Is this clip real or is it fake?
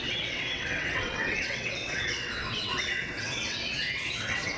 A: fake